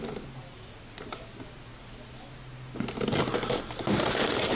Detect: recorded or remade recorded